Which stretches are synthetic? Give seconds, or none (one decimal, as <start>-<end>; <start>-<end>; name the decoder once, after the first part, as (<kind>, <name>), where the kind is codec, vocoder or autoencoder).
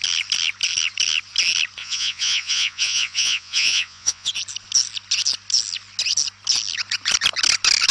1.8-4.3 (vocoder, Vocos)